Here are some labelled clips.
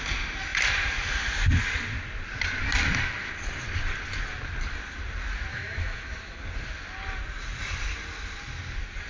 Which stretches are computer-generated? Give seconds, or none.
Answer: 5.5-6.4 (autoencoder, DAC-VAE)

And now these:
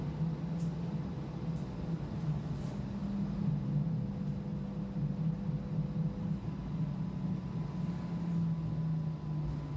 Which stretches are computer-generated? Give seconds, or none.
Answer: none

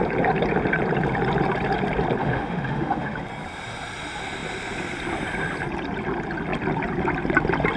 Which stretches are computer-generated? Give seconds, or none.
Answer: 2.2-3.2 (autoencoder, DAC-VAE)

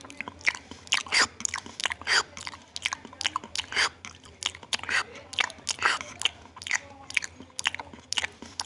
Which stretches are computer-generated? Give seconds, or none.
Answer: none

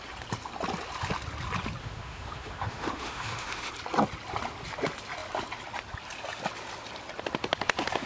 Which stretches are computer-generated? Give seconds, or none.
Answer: 1.8-3.7 (autoencoder, DAC-VAE)

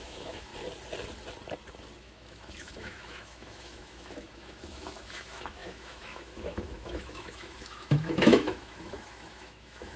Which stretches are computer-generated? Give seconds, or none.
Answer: 0.0-0.5 (autoencoder, DAC-VAE); 2.0-10.0

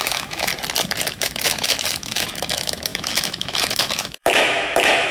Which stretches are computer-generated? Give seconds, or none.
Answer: 0.0-0.5 (autoencoder, DAC-VAE); 1.0-5.1

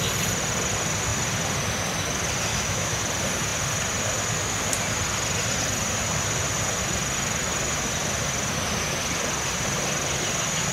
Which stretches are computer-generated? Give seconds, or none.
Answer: 2.5-3.0 (autoencoder, DAC-VAE)